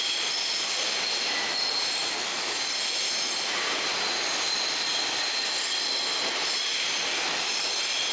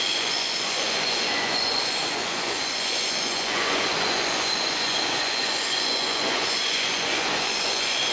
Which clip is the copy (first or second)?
second